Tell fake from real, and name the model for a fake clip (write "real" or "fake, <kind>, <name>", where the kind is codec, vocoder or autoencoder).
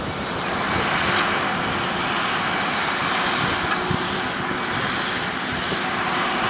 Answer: real